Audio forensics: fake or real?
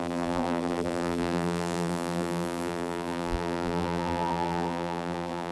fake